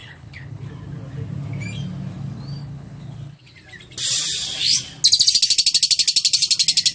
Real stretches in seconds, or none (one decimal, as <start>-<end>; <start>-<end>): 0.7-2.6; 3.4-6.9